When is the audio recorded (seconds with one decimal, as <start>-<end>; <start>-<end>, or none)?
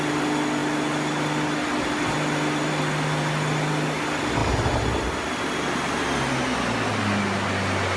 0.0-8.0